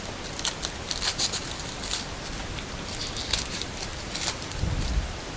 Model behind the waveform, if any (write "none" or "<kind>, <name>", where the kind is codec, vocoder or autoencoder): vocoder, BigVGAN v2